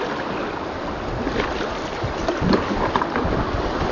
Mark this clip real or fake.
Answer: real